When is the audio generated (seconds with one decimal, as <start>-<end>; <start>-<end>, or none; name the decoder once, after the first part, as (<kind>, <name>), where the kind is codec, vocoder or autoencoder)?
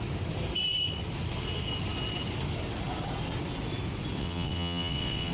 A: 4.2-5.3 (vocoder, WaveNeXt)